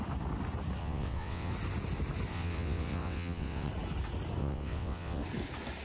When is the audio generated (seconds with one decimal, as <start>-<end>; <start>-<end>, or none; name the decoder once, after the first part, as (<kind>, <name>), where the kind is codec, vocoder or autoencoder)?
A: 0.8-1.5 (vocoder, WaveNeXt); 2.3-3.7; 4.4-5.2